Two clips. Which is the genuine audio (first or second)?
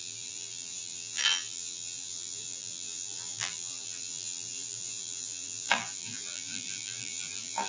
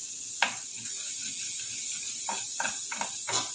second